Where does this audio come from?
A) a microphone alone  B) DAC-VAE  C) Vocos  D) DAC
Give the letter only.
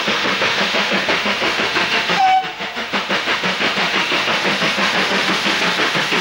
B